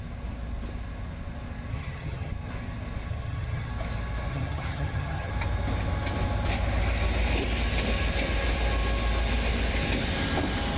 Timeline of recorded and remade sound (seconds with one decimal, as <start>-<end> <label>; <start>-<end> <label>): 0.0-1.7 recorded; 1.7-2.3 remade; 2.3-3.1 recorded; 3.1-3.7 remade; 3.7-4.3 recorded; 4.3-5.3 remade; 5.3-10.8 recorded